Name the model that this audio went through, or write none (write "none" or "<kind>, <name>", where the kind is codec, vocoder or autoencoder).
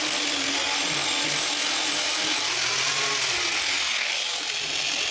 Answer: none